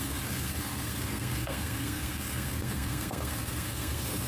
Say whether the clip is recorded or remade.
remade